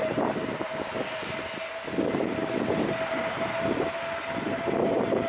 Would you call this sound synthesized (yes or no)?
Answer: no